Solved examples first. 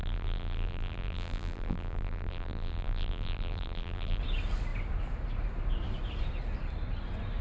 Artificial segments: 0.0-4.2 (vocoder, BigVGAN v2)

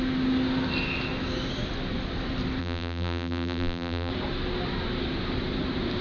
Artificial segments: 2.6-4.1 (vocoder, BigVGAN v2)

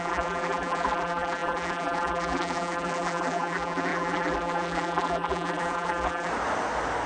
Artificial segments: 0.0-6.3 (vocoder, BigVGAN v2)

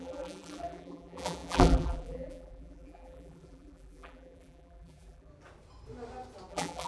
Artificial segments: 0.0-5.3 (vocoder, BigVGAN v2); 6.5-6.9